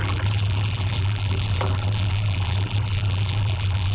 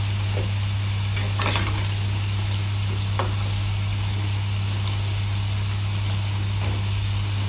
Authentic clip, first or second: second